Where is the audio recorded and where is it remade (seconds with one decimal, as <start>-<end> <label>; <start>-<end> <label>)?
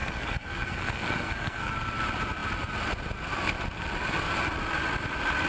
0.0-1.7 remade; 1.7-5.5 recorded